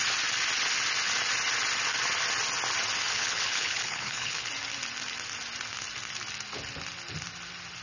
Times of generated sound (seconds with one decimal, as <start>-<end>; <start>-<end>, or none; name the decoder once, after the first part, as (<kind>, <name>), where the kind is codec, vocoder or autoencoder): 3.1-4.5 (codec, HILCodec)

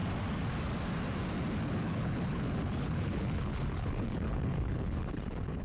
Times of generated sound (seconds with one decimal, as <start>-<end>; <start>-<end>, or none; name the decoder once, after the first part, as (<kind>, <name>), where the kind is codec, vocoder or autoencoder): 1.7-5.6 (codec, HILCodec)

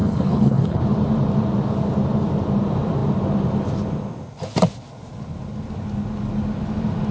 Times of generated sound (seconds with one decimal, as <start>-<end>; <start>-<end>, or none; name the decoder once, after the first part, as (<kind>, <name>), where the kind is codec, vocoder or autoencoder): 0.0-0.8 (codec, HILCodec)

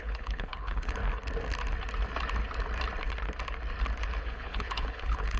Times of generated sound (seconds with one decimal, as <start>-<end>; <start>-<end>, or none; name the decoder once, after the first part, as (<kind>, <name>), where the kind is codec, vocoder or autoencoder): 0.0-1.0 (codec, HILCodec); 4.2-5.4